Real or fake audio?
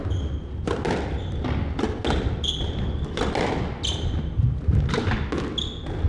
real